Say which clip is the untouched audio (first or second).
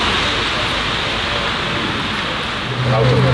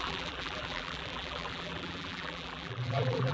first